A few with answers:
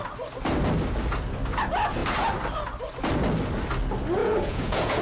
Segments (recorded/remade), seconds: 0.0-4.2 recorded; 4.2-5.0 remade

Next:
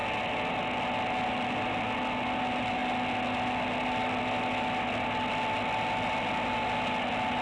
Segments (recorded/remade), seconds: 0.0-7.4 recorded

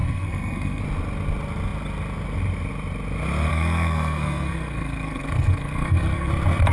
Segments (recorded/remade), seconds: 0.0-0.8 remade; 0.8-3.5 recorded; 3.5-6.3 remade; 6.3-6.7 recorded